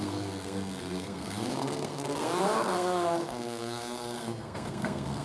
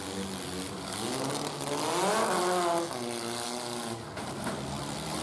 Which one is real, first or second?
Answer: second